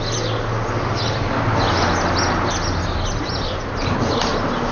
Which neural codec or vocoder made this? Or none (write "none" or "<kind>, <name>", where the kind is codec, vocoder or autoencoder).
none